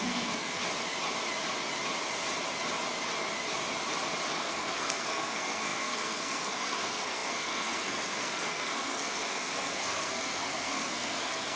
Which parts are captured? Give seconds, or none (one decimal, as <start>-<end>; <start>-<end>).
0.6-4.4